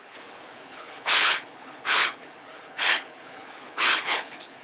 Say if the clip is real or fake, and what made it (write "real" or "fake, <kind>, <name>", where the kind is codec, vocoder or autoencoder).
fake, codec, HILCodec